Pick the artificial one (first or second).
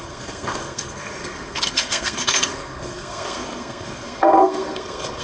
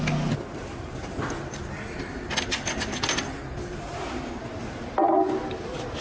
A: first